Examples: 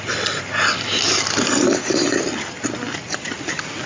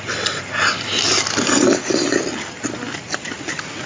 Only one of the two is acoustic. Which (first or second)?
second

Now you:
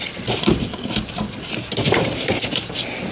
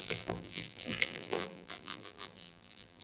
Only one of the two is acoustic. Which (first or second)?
first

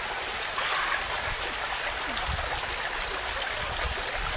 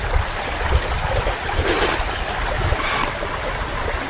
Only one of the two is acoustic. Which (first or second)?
first